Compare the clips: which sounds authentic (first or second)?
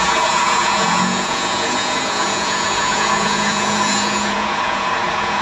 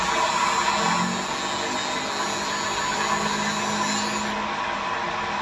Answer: second